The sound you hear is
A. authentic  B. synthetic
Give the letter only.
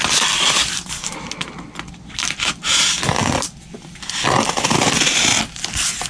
A